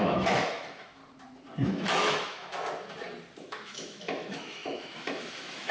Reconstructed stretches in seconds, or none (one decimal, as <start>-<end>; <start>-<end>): 0.0-1.0; 1.7-2.5; 3.4-5.7

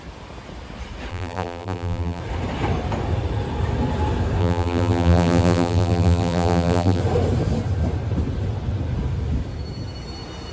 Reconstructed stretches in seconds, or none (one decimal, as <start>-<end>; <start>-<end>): 1.1-2.2; 4.4-7.0

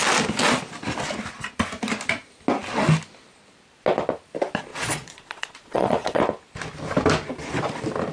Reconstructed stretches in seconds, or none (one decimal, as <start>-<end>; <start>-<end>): 4.7-6.2

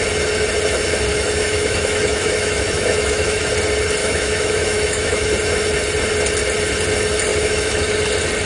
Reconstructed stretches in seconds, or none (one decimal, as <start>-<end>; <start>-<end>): 1.1-3.5; 4.0-5.3; 7.3-7.9